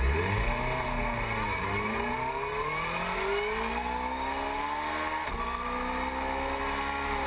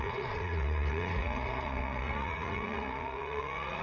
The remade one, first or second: second